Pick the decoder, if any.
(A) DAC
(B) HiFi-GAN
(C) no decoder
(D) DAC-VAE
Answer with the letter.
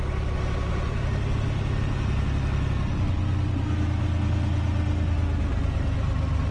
C